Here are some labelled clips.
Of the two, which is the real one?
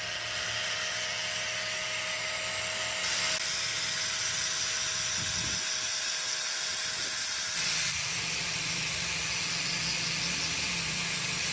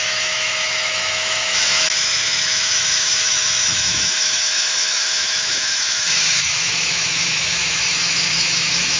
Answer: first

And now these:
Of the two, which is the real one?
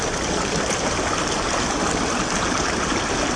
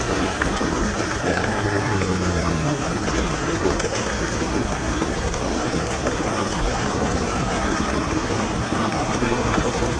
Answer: first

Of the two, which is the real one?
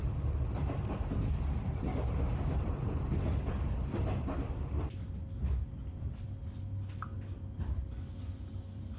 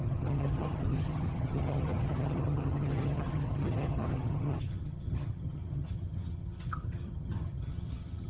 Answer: first